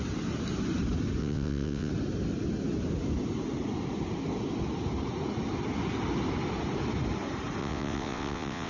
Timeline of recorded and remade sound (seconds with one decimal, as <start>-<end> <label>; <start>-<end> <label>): 0.0-1.2 recorded; 1.2-1.9 remade; 1.9-7.6 recorded; 7.6-8.7 remade